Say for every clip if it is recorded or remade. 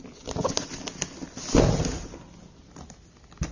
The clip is recorded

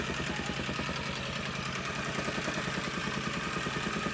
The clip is recorded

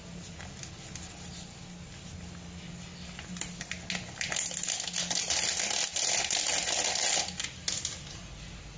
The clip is recorded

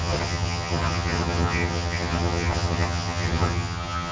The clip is remade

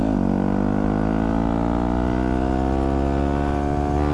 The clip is recorded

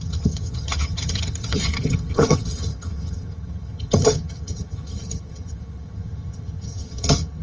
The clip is remade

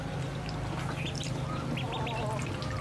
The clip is recorded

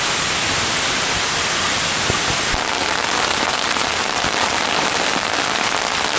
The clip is recorded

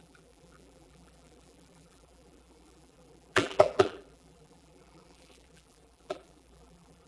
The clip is remade